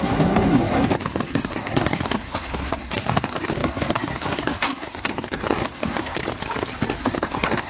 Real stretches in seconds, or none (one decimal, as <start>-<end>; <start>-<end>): 6.2-7.0